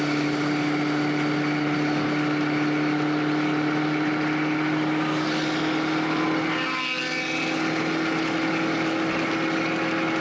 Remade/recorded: recorded